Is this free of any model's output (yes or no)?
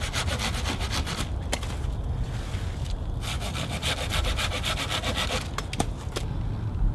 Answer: yes